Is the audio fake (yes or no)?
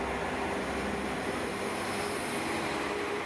no